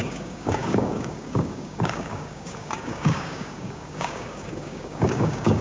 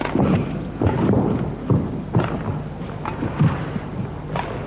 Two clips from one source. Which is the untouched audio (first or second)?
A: second